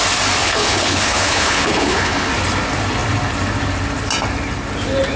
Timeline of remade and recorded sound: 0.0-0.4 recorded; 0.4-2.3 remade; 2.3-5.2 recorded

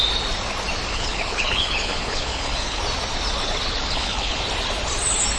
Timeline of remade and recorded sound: 0.0-0.9 recorded; 0.9-2.8 remade; 2.8-3.8 recorded; 3.8-4.4 remade; 4.4-5.4 recorded

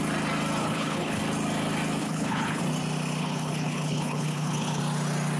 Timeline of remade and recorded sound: 0.0-0.6 recorded; 0.6-1.2 remade; 1.2-2.0 recorded; 2.0-2.6 remade; 2.6-3.2 recorded; 3.2-4.8 remade; 4.8-5.4 recorded